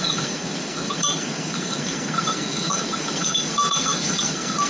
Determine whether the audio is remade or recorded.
remade